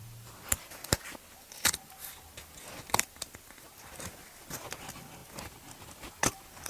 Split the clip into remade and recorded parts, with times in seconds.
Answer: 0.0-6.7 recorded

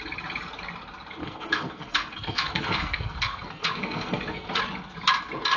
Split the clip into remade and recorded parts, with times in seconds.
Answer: 0.0-1.2 recorded; 1.2-4.6 remade; 4.6-5.6 recorded

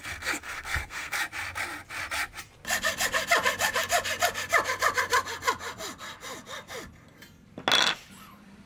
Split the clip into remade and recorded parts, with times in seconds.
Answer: 0.0-1.2 remade; 1.2-8.7 recorded